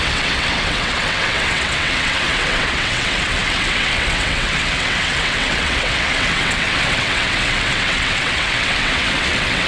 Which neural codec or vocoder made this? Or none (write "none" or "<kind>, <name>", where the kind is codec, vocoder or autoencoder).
vocoder, WaveNeXt